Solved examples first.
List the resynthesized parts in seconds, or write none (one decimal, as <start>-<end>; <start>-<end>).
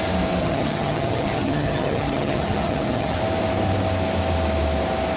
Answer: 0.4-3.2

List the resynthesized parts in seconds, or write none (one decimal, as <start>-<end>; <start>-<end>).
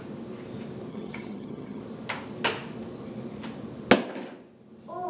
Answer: 0.9-1.8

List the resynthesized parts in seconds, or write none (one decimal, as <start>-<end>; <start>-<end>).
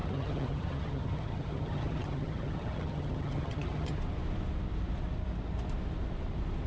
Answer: 0.0-4.0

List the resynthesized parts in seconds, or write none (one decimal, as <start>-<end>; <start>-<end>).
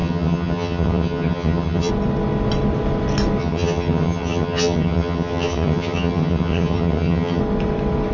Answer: 0.0-1.9; 3.4-7.4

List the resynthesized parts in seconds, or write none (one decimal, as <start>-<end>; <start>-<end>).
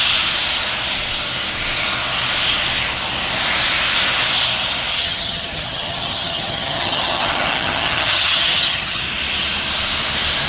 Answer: 4.9-9.0